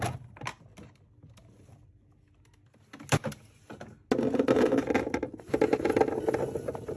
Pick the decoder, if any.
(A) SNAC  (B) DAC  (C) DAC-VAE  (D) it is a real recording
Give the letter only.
D